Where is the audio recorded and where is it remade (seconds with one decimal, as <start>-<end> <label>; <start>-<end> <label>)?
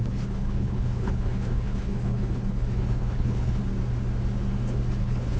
0.0-3.6 remade; 3.6-5.0 recorded; 5.0-5.4 remade